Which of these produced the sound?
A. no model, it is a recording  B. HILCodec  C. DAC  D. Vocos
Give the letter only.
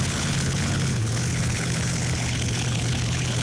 B